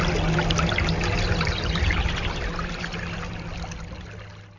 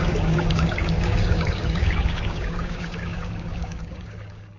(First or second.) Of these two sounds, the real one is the first